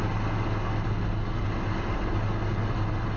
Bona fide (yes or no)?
yes